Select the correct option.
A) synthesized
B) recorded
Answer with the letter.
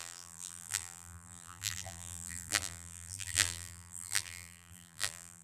A